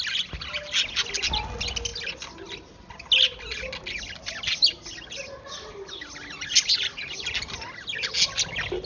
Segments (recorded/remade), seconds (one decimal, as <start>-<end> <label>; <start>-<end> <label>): 0.0-8.9 recorded